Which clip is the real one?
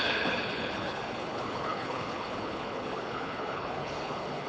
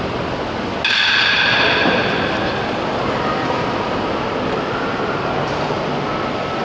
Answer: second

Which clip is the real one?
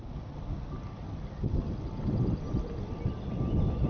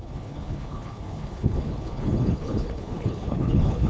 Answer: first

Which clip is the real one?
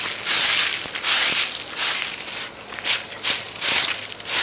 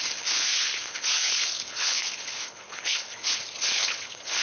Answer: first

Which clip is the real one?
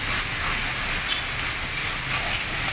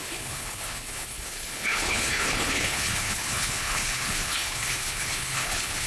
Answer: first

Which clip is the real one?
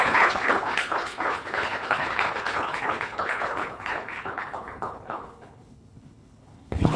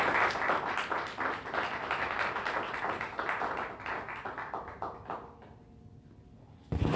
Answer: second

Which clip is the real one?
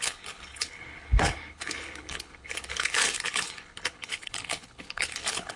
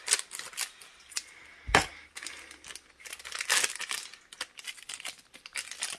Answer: second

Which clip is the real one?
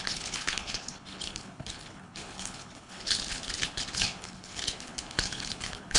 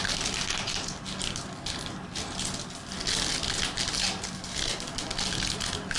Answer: second